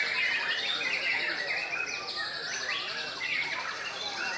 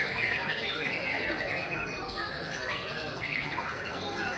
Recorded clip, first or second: first